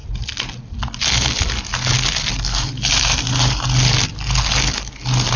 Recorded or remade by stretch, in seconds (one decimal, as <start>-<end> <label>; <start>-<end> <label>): 0.0-5.4 recorded